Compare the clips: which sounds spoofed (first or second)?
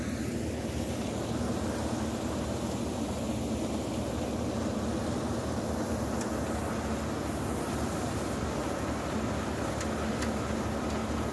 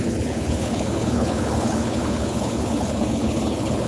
second